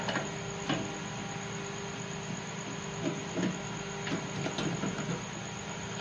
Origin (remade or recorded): recorded